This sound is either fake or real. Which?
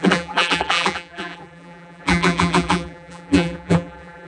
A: fake